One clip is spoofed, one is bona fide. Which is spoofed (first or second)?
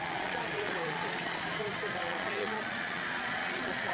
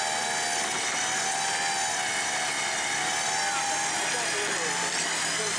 first